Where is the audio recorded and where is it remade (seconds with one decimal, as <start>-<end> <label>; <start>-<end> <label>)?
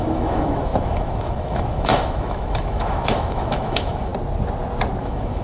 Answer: 0.0-4.1 remade; 4.1-5.0 recorded; 5.0-5.4 remade